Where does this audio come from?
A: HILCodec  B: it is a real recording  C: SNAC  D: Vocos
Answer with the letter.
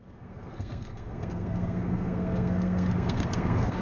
C